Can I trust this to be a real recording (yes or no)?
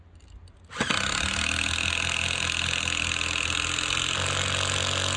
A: yes